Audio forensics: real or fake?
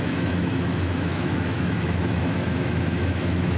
fake